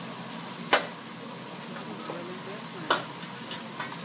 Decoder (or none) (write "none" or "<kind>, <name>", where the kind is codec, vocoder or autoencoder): none